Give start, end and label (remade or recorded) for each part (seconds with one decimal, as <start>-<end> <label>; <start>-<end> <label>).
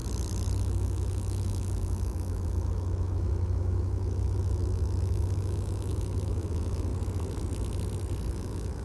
0.0-0.6 recorded; 0.6-6.9 remade; 6.9-8.3 recorded; 8.3-8.8 remade